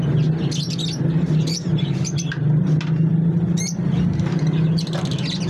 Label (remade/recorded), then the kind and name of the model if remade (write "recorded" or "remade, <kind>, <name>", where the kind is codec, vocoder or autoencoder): recorded